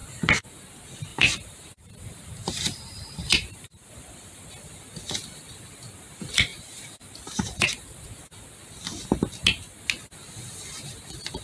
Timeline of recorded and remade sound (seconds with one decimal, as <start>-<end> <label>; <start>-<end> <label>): 0.0-1.1 recorded; 1.1-3.9 remade; 3.9-6.5 recorded; 6.5-8.1 remade; 8.1-11.4 recorded